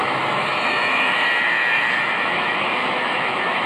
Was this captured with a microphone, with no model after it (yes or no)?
no